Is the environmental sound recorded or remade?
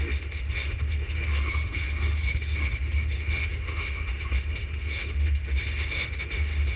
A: remade